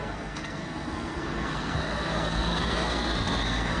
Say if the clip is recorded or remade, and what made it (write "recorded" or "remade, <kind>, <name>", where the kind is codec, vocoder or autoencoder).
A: remade, codec, SNAC